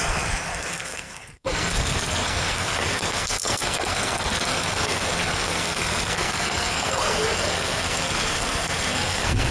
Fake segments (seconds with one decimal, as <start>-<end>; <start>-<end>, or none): 0.0-9.5